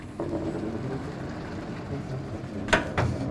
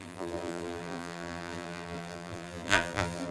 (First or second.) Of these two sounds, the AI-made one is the second